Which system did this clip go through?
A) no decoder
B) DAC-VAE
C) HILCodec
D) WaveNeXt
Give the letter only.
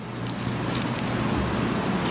A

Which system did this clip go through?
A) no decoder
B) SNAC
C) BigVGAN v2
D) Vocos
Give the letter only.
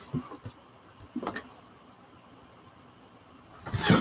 A